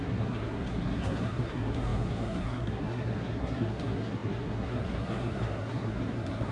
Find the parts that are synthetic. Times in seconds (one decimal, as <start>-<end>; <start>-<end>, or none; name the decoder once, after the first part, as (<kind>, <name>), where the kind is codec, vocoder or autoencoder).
0.0-6.5 (codec, SNAC)

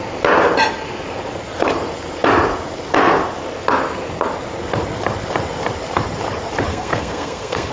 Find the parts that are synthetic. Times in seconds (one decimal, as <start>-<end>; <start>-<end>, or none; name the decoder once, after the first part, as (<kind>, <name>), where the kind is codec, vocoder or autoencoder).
6.7-7.7 (codec, SNAC)

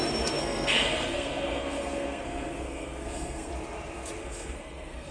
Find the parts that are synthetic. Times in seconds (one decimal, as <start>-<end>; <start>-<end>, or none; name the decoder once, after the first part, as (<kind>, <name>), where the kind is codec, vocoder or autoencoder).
0.4-3.5 (codec, SNAC); 4.2-5.1

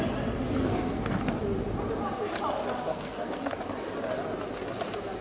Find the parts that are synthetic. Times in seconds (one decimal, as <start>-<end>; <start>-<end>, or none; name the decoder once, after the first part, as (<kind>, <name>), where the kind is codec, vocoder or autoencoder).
0.6-1.4 (codec, SNAC); 2.9-3.6

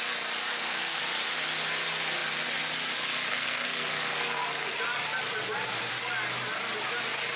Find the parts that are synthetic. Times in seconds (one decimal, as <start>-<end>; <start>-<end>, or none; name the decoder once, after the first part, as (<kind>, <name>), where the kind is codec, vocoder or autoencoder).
0.5-1.0 (codec, SNAC); 3.3-4.8

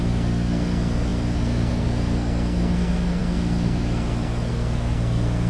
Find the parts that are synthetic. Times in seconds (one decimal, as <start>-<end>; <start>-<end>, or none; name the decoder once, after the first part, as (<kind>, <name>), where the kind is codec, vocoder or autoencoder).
0.0-5.5 (codec, SNAC)